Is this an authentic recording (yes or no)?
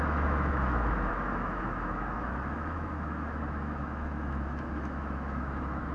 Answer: no